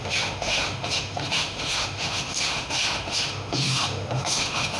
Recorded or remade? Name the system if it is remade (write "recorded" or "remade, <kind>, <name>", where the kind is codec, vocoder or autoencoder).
remade, autoencoder, DAC-VAE